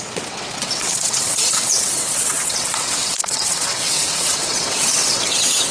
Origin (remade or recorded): remade